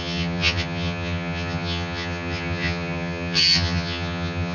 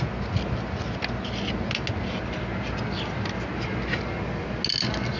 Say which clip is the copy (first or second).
first